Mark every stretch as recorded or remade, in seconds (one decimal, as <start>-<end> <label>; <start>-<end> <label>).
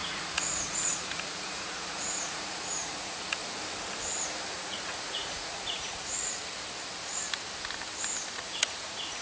0.0-3.4 remade; 3.4-4.5 recorded; 4.5-6.4 remade; 6.4-8.3 recorded; 8.3-9.2 remade